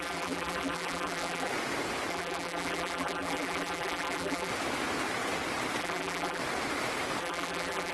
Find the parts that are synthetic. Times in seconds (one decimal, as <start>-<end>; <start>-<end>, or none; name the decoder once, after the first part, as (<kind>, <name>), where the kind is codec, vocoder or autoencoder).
0.0-1.5 (vocoder, BigVGAN v2); 2.1-4.5; 5.8-6.4; 7.2-7.9